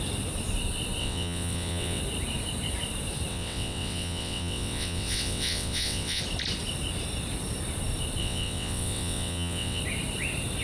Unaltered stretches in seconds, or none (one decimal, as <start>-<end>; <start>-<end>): 0.0-1.0; 2.0-3.3; 6.2-8.2; 9.8-10.6